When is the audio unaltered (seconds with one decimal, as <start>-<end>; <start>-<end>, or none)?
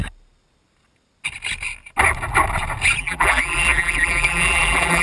0.0-3.0